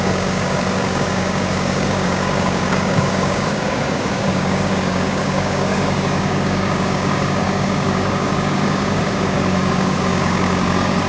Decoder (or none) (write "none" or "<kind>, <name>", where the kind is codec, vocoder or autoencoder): codec, DAC